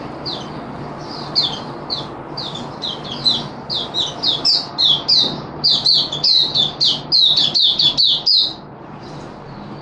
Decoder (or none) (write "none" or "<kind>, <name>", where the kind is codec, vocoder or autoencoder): none